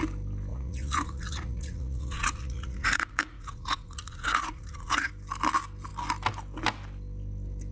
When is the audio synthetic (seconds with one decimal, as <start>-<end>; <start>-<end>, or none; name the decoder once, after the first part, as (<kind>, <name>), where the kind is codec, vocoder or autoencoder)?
0.5-5.1 (vocoder, Vocos)